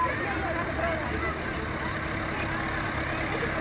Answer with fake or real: real